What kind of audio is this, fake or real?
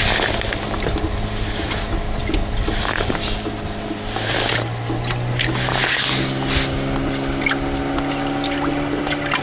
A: real